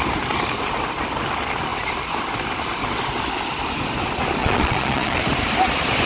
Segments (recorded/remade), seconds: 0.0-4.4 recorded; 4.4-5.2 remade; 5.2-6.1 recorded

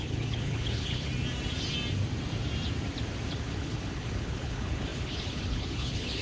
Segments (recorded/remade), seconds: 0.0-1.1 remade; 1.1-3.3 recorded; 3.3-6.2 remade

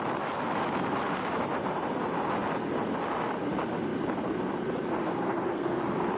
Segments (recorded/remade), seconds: 0.0-5.0 recorded; 5.0-5.8 remade; 5.8-6.2 recorded

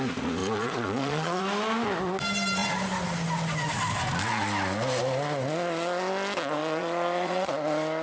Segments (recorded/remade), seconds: 0.0-0.4 recorded; 0.4-1.4 remade; 1.4-6.6 recorded; 6.6-7.5 remade; 7.5-8.0 recorded

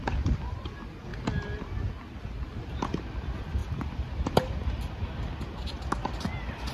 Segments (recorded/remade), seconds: 0.0-6.7 recorded